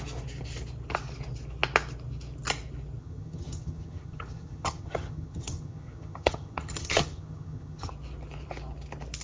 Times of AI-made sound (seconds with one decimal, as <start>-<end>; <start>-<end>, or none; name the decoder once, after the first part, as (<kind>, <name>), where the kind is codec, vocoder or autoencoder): 3.0-7.9 (vocoder, HiFi-GAN)

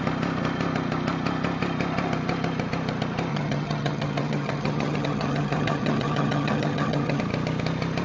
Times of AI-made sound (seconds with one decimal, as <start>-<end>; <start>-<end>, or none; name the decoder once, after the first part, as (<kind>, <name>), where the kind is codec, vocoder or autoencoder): 3.3-7.2 (vocoder, HiFi-GAN)

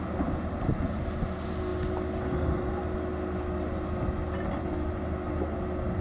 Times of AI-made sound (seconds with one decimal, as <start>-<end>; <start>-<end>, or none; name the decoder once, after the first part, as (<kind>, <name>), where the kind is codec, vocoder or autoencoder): none

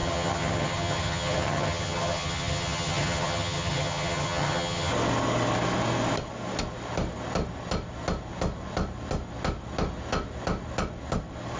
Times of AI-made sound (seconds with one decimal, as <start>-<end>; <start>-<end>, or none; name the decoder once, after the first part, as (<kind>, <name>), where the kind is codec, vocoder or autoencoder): 0.0-4.9 (vocoder, HiFi-GAN)